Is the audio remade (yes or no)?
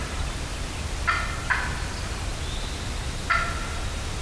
no